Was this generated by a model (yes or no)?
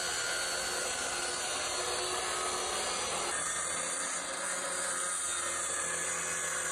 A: no